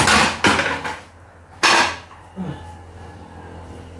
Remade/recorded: recorded